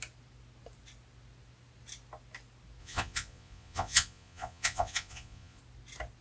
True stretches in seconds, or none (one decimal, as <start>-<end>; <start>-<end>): 0.0-2.8; 5.6-6.2